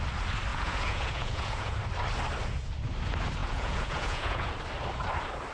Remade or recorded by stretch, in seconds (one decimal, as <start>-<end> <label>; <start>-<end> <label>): 0.0-0.5 recorded; 0.5-1.8 remade; 1.8-3.4 recorded; 3.4-4.5 remade; 4.5-5.5 recorded